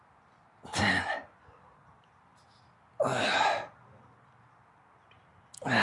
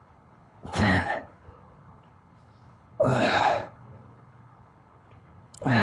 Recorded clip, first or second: first